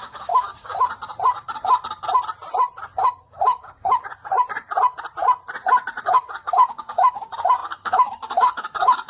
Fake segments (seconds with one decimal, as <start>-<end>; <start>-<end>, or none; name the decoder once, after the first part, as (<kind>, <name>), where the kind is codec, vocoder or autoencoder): 0.0-0.7 (codec, DAC); 3.2-4.2; 6.0-9.1